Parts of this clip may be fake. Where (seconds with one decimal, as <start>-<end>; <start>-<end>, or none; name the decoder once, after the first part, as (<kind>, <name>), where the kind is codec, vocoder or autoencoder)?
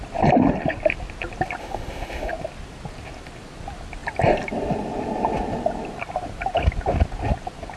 1.6-2.3 (autoencoder, DAC-VAE)